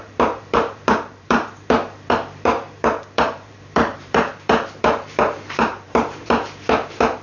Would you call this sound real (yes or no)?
no